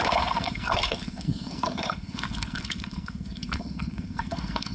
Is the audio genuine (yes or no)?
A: no